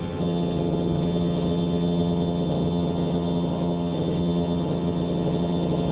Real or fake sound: fake